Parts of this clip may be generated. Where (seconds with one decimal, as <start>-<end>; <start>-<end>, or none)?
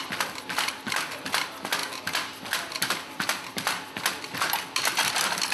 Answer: none